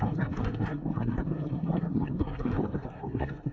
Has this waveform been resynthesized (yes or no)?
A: yes